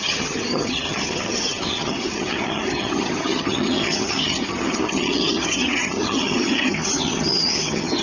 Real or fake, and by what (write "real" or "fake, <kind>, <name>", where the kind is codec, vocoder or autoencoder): fake, vocoder, HiFi-GAN